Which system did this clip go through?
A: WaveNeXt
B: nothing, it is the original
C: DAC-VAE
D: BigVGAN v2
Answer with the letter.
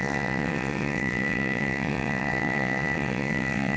A